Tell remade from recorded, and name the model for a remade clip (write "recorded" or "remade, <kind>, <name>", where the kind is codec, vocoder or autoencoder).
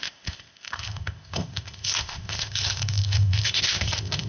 remade, codec, ZipCodec